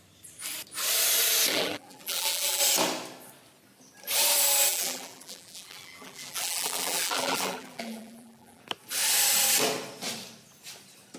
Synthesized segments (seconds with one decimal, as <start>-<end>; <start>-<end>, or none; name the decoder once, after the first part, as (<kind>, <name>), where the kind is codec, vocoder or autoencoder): 1.5-2.6 (vocoder, BigVGAN v2); 4.7-8.6